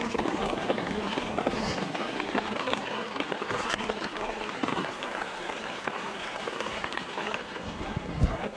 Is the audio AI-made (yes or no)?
yes